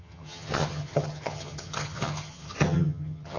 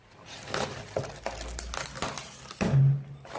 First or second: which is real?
second